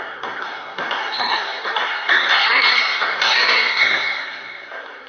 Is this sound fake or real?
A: fake